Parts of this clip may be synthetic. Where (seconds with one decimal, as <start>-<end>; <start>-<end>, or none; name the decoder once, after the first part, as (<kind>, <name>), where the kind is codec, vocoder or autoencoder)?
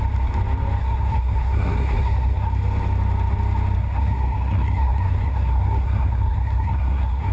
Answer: 0.8-2.5 (codec, SNAC); 3.8-7.3